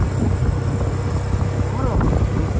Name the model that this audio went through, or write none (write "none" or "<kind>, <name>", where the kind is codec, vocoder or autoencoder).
none